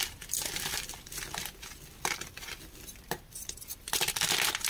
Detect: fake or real fake